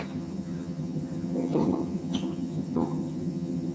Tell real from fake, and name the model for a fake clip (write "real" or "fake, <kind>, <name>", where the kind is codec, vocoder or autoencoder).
fake, vocoder, HiFi-GAN